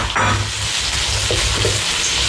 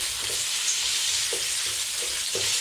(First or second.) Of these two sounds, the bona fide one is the first